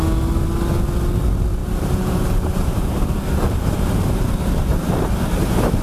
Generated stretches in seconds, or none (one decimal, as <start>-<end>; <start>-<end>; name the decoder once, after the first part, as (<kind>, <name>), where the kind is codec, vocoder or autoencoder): 1.6-3.7 (vocoder, BigVGAN v2); 4.7-5.8